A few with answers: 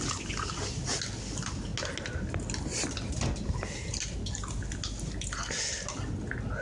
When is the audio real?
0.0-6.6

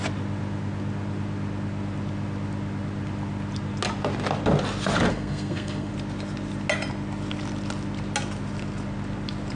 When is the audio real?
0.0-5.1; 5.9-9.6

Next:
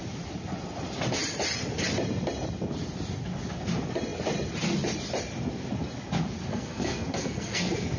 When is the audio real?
0.0-6.5

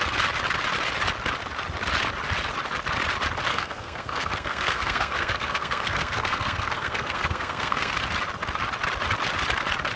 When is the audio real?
0.0-3.5; 7.9-10.0

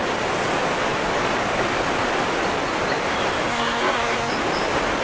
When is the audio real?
0.0-3.5; 4.3-5.0

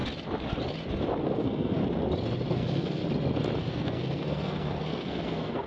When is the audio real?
0.0-1.2; 1.8-2.5; 3.0-3.6

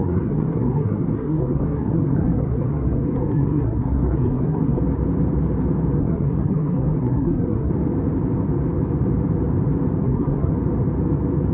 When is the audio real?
4.8-6.0; 7.7-10.0; 10.5-11.5

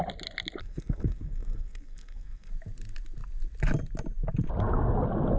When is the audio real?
0.0-0.6; 2.5-5.4